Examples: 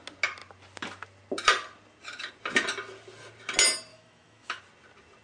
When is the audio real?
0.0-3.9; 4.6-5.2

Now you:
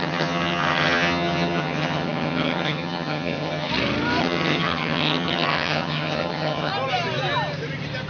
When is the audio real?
3.7-4.2; 6.7-8.1

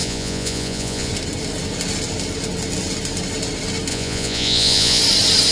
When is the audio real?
1.1-3.9; 5.0-5.5

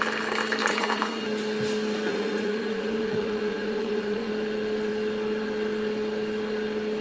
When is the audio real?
0.0-0.6; 1.2-2.1; 4.3-7.0

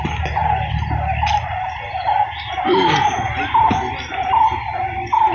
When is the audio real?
0.0-5.3

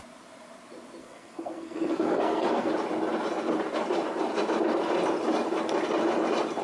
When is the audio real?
0.0-1.0; 2.7-6.6

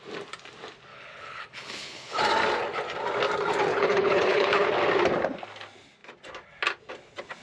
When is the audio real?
0.0-0.9; 2.2-3.7; 4.7-7.4

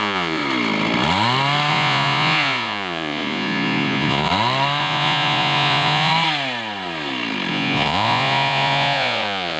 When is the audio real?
0.4-1.7; 4.3-4.8; 6.1-7.5